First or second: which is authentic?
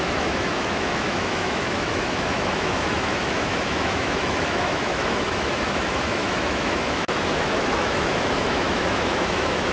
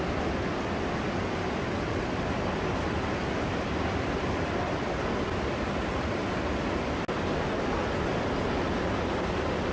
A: second